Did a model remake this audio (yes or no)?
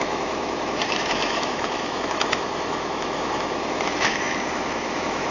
yes